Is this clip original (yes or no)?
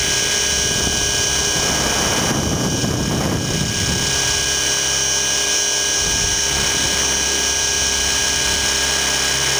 yes